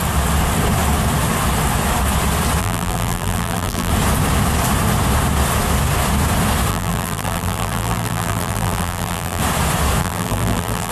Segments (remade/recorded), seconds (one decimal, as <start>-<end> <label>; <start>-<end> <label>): 0.0-2.6 recorded; 2.6-3.9 remade; 3.9-6.7 recorded; 6.7-9.4 remade; 9.4-10.0 recorded; 10.0-10.9 remade